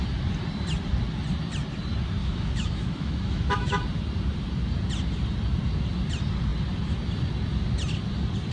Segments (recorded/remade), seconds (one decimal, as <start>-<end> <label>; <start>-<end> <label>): 0.0-2.2 recorded; 2.2-3.8 remade; 3.8-8.5 recorded